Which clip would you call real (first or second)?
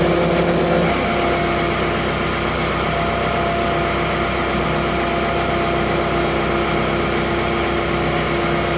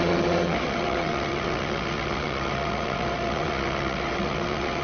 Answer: first